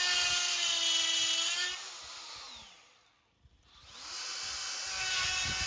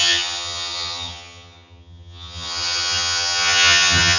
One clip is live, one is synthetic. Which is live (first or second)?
first